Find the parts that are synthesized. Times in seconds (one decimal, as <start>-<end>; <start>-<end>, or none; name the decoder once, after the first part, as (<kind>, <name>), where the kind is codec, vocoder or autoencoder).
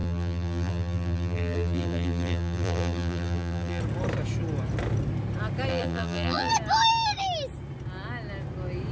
0.0-3.8 (vocoder, BigVGAN v2); 5.7-6.5